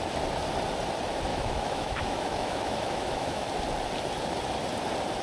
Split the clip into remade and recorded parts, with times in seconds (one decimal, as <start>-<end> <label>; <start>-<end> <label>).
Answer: 0.0-1.3 recorded; 1.3-3.5 remade; 3.5-5.2 recorded